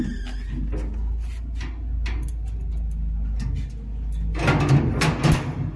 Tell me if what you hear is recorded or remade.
recorded